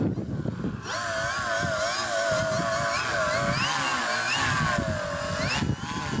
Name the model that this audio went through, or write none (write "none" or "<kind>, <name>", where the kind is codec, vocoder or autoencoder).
none